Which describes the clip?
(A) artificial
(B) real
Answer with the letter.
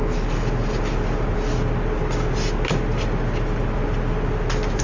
B